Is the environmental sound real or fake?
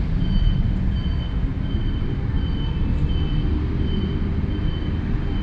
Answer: real